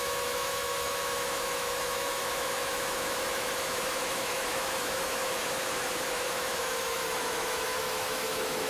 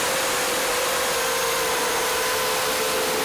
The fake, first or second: first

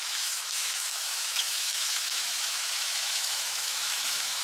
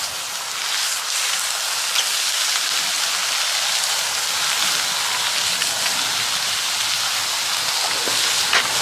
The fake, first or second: first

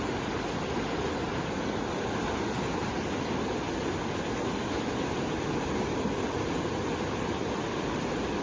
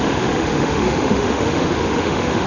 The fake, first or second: second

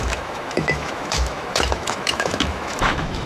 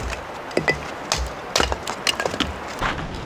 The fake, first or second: first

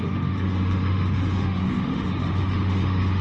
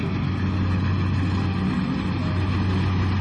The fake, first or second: first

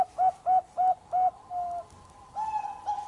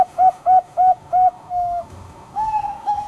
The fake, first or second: second